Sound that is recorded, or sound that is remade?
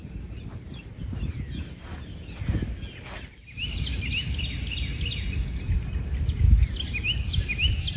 recorded